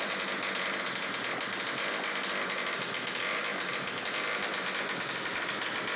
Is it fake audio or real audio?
real